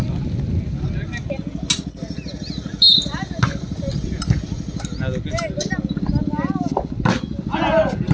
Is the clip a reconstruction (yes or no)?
no